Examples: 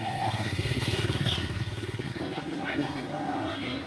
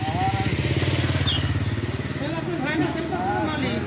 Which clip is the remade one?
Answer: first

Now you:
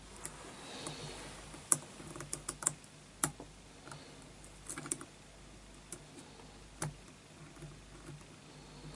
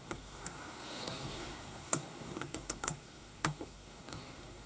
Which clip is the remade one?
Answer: second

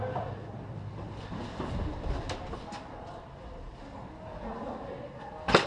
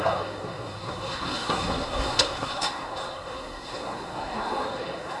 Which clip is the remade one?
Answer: second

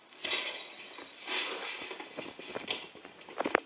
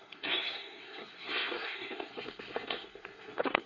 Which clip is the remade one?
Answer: second